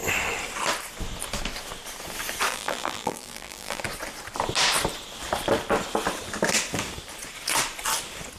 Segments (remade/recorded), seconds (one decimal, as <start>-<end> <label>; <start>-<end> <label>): 0.0-2.5 recorded; 2.5-3.8 remade; 3.8-8.4 recorded